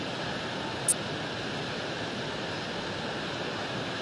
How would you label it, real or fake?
real